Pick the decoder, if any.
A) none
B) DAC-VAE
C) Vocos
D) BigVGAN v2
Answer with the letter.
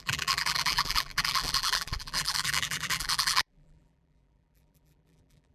D